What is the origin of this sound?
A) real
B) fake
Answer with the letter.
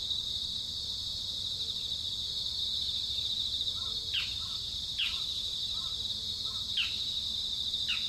A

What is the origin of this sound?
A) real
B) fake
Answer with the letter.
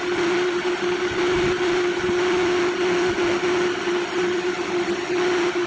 A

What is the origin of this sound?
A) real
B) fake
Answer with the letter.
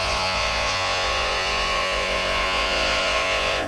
B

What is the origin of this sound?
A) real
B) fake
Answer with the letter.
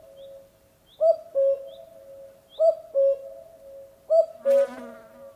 A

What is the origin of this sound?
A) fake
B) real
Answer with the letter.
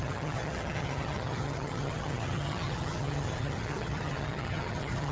A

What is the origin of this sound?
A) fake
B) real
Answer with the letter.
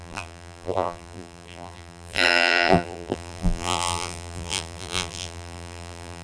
A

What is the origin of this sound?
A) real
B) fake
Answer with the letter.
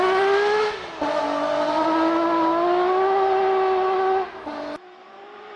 A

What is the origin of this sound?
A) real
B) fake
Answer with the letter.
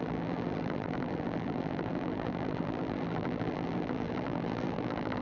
B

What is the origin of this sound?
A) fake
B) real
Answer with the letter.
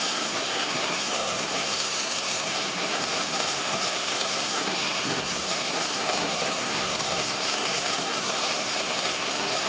A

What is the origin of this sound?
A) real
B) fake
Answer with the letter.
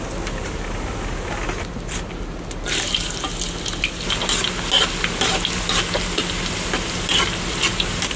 A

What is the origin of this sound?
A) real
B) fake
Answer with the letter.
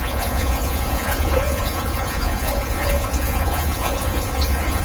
B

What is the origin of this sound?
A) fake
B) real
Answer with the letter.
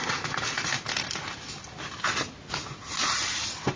B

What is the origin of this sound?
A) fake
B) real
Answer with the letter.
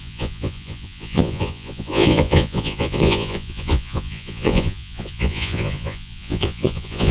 A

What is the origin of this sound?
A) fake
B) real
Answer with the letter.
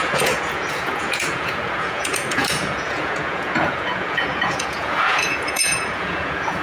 A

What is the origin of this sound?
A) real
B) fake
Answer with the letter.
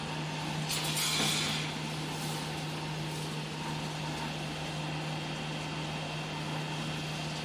A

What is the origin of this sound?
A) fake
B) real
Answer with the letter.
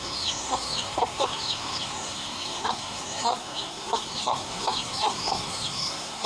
A